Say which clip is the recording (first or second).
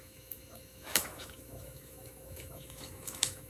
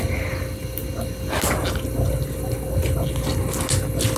second